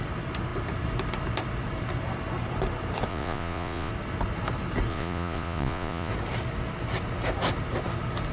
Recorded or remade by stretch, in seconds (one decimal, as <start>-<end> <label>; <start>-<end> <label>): 0.0-3.1 recorded; 3.1-3.9 remade; 3.9-4.9 recorded; 4.9-6.1 remade; 6.1-8.3 recorded